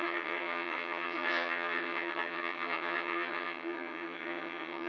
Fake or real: fake